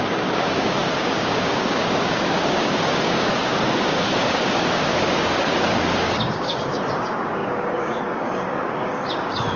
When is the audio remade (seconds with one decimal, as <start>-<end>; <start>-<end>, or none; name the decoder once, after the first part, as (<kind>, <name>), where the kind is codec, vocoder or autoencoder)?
0.0-9.6 (codec, DAC)